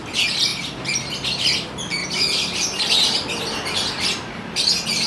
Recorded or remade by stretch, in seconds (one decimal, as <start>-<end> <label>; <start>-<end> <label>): 0.0-0.5 recorded; 0.5-1.5 remade; 1.5-2.0 recorded; 2.0-3.4 remade; 3.4-5.1 recorded